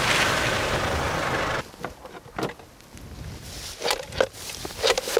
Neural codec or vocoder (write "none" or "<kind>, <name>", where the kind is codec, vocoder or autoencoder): none